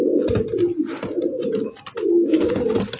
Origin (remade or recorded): recorded